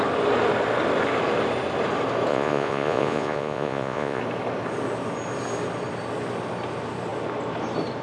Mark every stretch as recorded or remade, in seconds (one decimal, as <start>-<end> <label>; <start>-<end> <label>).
0.0-2.3 recorded; 2.3-4.2 remade; 4.2-8.0 recorded